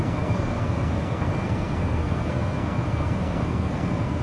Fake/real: fake